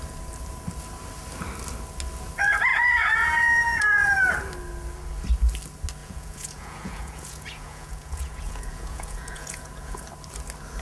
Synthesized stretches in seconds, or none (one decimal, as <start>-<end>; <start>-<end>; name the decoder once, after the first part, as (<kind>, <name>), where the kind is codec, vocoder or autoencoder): 2.7-4.2 (vocoder, Vocos); 6.0-10.0